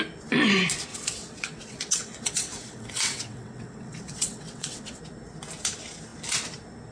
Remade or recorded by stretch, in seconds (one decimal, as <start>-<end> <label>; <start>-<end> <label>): 0.0-0.9 recorded; 0.9-5.0 remade; 5.0-6.9 recorded